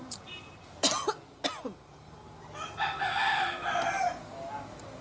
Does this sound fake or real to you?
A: real